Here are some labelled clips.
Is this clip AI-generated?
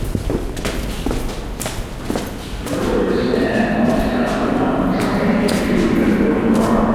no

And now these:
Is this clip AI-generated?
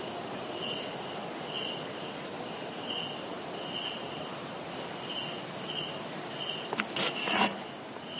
no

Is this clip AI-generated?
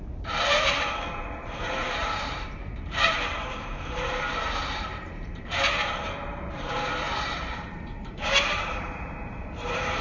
yes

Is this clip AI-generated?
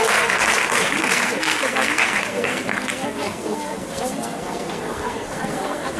yes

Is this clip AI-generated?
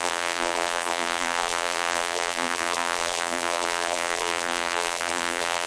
yes